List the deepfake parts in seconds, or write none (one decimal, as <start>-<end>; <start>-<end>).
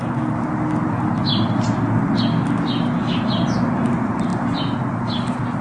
none